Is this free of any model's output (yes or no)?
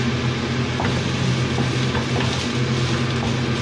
yes